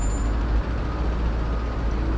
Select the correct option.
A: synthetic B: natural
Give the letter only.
B